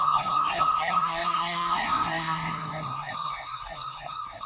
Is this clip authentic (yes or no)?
no